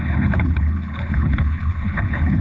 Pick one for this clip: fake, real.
fake